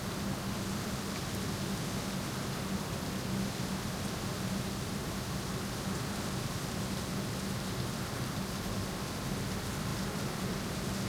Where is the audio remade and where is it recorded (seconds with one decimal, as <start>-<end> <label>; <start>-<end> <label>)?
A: 0.0-9.9 recorded; 9.9-10.5 remade; 10.5-11.1 recorded